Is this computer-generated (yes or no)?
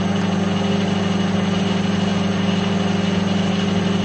no